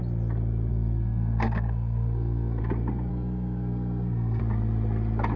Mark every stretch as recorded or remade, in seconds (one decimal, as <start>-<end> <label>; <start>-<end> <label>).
0.0-0.7 recorded; 0.7-2.6 remade; 2.6-3.1 recorded; 3.1-4.4 remade; 4.4-5.4 recorded